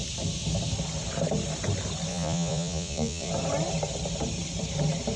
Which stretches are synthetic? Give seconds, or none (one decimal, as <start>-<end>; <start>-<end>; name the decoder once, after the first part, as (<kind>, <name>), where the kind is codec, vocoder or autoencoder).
2.1-3.3 (vocoder, Vocos)